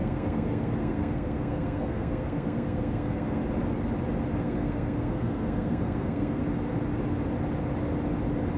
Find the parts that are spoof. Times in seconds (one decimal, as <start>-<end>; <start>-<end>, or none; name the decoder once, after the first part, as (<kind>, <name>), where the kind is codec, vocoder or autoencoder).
0.0-3.4 (codec, SNAC); 4.4-6.4